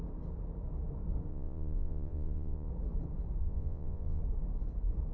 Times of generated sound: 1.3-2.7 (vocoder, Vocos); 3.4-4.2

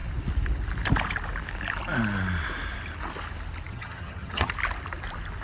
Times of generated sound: 3.7-4.5 (vocoder, HiFi-GAN)

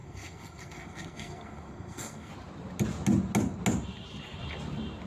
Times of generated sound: 0.0-2.3 (codec, SNAC)

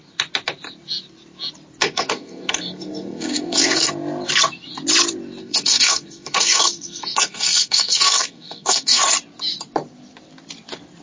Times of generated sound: 1.8-3.9 (codec, SNAC); 5.4-9.0